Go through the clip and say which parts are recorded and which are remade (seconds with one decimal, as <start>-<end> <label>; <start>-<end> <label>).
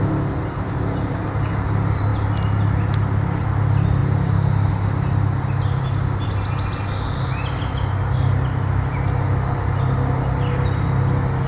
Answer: 0.0-11.5 recorded